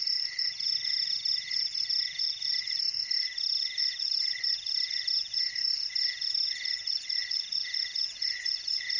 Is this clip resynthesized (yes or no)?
no